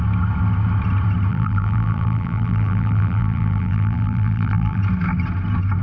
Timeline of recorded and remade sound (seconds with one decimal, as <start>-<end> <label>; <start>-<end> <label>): 0.0-1.3 recorded; 1.3-4.8 remade; 4.8-5.8 recorded